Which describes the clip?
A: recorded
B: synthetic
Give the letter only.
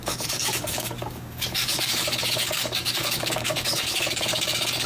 B